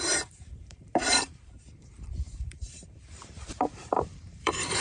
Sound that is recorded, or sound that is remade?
remade